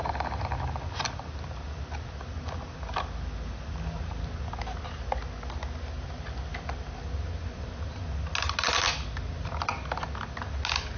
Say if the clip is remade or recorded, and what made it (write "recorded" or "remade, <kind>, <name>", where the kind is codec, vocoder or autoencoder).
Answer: recorded